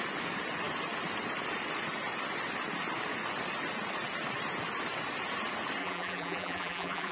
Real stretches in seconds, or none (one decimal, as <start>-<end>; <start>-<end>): 0.0-5.8

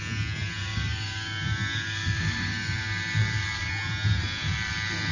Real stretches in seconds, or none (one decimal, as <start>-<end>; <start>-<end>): 0.0-0.6; 3.7-5.1

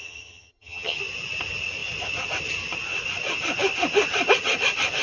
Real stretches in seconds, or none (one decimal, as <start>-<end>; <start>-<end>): 1.0-5.0

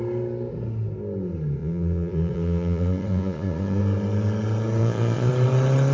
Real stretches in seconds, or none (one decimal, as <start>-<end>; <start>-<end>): 0.0-1.6; 3.8-4.8; 5.3-5.9